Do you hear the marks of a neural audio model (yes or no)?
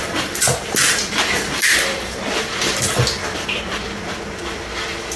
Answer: no